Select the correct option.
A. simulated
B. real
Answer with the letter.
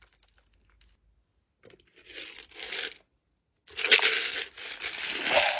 B